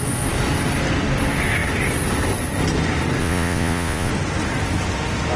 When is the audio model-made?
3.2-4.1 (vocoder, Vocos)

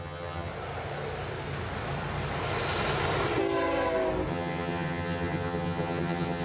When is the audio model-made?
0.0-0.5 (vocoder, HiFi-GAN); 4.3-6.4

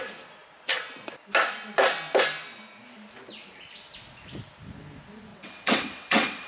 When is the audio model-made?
5.3-6.5 (vocoder, WaveNeXt)

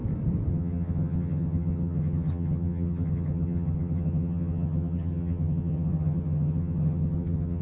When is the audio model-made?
0.5-7.6 (vocoder, HiFi-GAN)

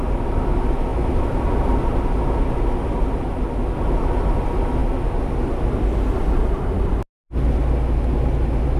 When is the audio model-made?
0.9-2.0 (vocoder, BigVGAN v2)

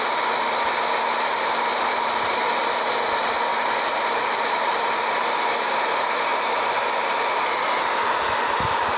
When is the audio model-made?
1.7-2.6 (vocoder, BigVGAN v2); 3.5-4.8